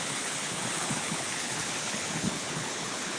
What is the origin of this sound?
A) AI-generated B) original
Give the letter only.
A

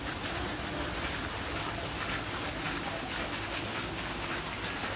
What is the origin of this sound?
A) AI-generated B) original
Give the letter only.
B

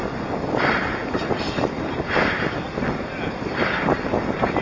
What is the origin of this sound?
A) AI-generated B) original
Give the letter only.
B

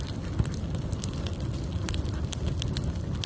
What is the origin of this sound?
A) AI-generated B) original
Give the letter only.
B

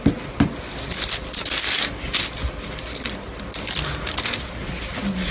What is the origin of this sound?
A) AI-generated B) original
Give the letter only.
B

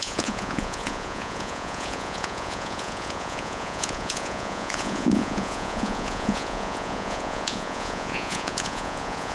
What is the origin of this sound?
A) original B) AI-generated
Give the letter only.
B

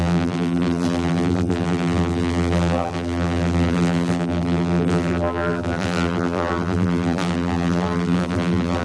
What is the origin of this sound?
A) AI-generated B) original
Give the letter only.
A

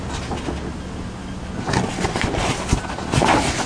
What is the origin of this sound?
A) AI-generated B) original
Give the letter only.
B